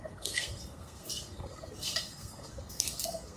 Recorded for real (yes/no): no